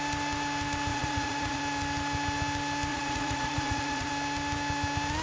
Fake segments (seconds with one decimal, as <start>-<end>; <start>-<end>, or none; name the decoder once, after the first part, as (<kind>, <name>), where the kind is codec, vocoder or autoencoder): 0.9-1.6 (vocoder, Vocos); 2.9-4.1